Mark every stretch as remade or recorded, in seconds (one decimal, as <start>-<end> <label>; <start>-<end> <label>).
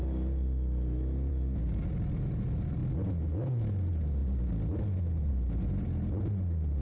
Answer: 0.0-6.8 recorded